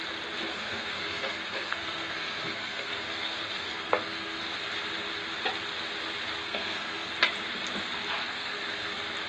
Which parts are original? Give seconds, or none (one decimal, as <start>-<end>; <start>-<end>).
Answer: 0.0-0.5; 4.4-6.4; 7.1-8.2; 8.9-9.3